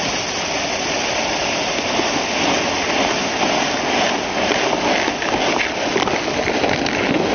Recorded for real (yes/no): yes